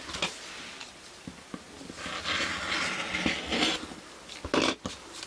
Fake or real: real